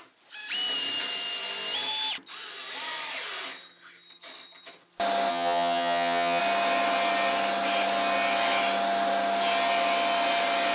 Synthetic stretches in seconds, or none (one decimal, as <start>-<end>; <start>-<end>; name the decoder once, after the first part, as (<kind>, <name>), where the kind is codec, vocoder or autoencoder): 5.3-6.4 (vocoder, HiFi-GAN)